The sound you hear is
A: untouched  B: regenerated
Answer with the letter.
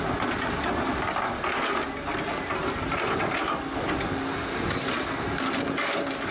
A